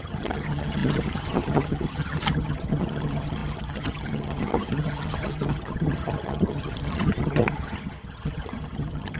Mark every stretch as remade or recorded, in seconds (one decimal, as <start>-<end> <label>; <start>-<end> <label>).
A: 0.0-9.2 remade